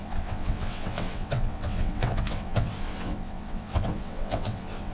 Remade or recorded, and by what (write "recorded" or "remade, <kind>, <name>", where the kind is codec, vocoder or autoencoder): remade, vocoder, WaveNeXt